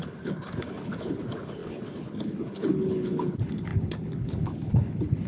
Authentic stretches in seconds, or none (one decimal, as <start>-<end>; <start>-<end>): none